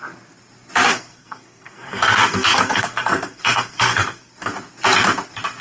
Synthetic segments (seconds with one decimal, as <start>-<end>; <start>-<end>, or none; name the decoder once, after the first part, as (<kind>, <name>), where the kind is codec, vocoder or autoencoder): 0.9-4.3 (codec, SNAC)